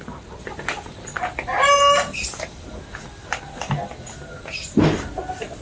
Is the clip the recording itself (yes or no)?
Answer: yes